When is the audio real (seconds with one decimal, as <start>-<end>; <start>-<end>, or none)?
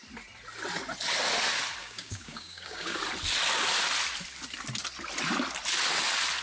0.0-1.8; 3.0-6.4